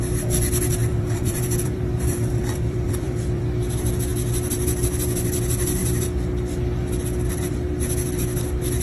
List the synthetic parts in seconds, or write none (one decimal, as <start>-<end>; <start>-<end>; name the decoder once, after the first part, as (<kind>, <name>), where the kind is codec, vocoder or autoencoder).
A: 0.8-3.4 (vocoder, BigVGAN v2)